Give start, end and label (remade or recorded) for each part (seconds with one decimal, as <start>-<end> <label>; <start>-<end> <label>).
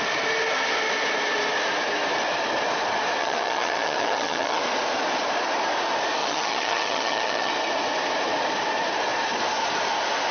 0.0-3.2 recorded; 3.2-4.6 remade; 4.6-6.2 recorded; 6.2-7.5 remade; 7.5-10.3 recorded